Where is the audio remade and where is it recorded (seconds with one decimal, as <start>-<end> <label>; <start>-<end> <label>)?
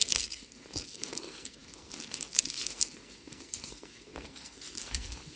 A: 0.0-5.4 remade